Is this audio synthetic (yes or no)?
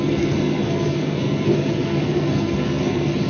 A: yes